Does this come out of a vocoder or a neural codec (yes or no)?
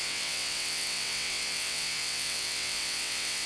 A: yes